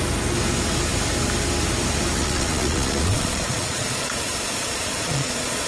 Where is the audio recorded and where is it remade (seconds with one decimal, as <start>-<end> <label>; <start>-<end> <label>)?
0.0-2.2 recorded; 2.2-5.7 remade